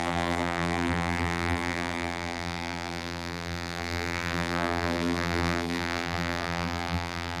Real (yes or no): no